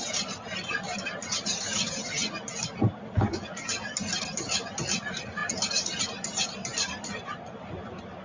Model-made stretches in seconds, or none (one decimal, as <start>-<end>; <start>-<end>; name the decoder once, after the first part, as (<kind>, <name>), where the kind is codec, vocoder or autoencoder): 0.0-2.2 (vocoder, BigVGAN v2); 5.0-5.4; 6.0-8.2